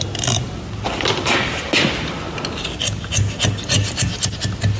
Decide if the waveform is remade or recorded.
recorded